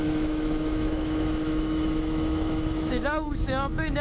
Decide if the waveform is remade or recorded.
remade